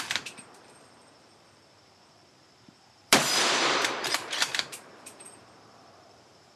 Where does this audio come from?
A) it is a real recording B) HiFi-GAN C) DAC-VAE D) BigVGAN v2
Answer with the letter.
D